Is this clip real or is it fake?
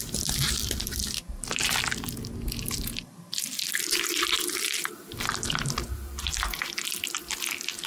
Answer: real